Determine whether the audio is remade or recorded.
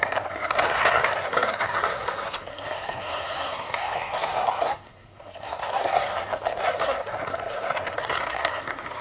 remade